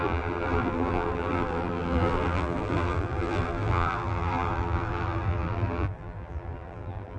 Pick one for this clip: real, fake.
fake